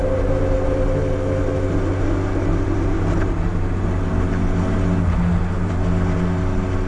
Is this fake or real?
real